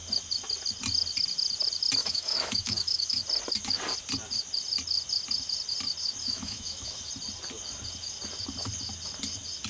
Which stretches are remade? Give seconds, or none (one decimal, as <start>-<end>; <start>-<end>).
2.0-3.2; 6.2-7.1